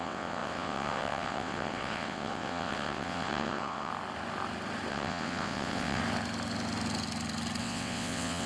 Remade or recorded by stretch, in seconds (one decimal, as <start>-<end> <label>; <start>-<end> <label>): 0.0-3.9 remade; 3.9-4.9 recorded; 4.9-6.0 remade; 6.0-7.6 recorded; 7.6-8.5 remade